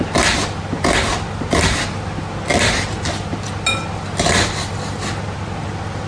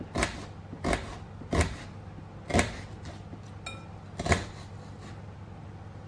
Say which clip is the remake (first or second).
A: first